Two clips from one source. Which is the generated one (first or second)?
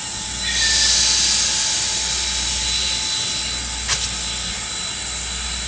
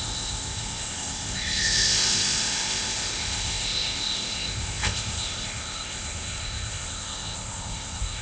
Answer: second